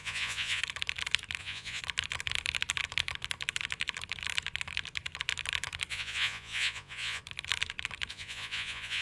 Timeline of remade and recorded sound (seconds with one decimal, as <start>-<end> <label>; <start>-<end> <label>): 0.0-0.6 remade; 0.6-1.4 recorded; 1.4-1.8 remade; 1.8-5.9 recorded; 5.9-7.2 remade; 7.2-8.1 recorded; 8.1-9.0 remade